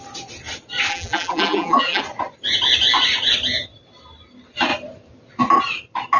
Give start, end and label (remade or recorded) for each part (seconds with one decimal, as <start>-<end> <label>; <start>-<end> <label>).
0.0-0.9 recorded; 0.9-2.0 remade; 2.0-6.2 recorded